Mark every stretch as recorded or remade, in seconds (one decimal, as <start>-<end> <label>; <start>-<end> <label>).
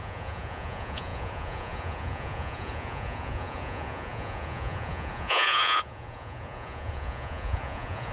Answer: 0.0-8.1 remade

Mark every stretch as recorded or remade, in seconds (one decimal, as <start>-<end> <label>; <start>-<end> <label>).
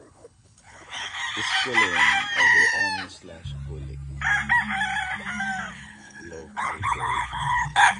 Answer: 0.0-1.2 remade; 1.2-2.4 recorded; 2.4-2.8 remade; 2.8-5.7 recorded; 5.7-8.0 remade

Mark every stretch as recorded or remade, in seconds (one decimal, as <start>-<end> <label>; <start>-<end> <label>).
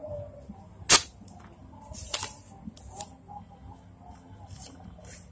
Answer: 0.0-5.3 recorded